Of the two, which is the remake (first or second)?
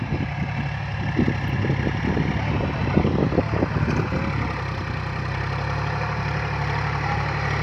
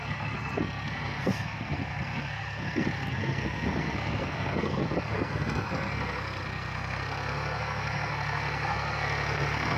second